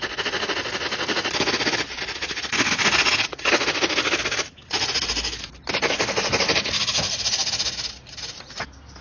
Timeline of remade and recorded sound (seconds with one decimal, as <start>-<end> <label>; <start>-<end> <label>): 0.0-9.0 recorded